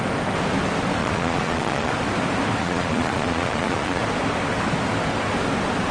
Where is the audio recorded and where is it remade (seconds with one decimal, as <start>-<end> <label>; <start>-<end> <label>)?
0.0-1.0 recorded; 1.0-1.9 remade; 1.9-2.6 recorded; 2.6-4.0 remade; 4.0-5.9 recorded